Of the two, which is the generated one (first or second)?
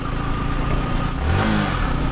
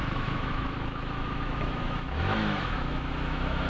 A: second